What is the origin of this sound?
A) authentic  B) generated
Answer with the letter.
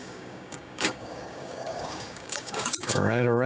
B